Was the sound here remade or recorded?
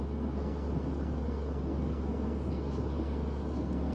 remade